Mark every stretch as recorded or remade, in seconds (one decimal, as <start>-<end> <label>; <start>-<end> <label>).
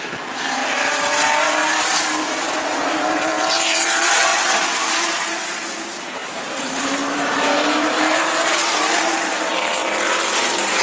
0.0-0.6 remade; 0.6-1.8 recorded; 1.8-4.3 remade; 4.3-4.9 recorded; 4.9-10.8 remade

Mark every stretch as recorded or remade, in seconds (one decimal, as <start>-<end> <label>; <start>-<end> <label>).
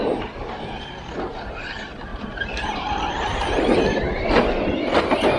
0.0-2.1 recorded; 2.1-3.9 remade; 3.9-5.4 recorded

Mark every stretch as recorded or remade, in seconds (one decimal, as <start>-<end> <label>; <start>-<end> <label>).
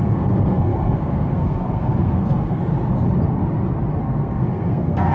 0.0-2.7 remade; 2.7-4.0 recorded; 4.0-5.1 remade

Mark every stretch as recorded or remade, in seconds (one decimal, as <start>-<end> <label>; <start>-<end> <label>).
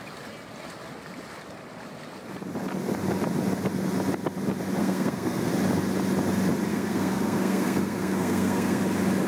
0.0-4.8 recorded; 4.8-5.5 remade; 5.5-6.7 recorded; 6.7-8.8 remade; 8.8-9.3 recorded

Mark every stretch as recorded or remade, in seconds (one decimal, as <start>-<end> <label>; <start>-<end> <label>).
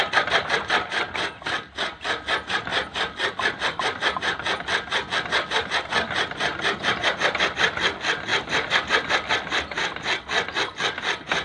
0.0-11.4 recorded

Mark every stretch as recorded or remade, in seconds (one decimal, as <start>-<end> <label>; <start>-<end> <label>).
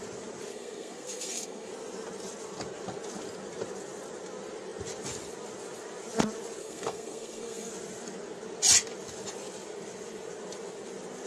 0.0-0.5 recorded; 0.5-1.7 remade; 1.7-6.6 recorded; 6.6-7.7 remade; 7.7-11.3 recorded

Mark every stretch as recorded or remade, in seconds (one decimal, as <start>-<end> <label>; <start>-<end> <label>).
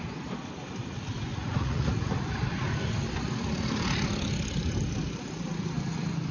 0.0-1.3 recorded; 1.3-1.9 remade; 1.9-6.3 recorded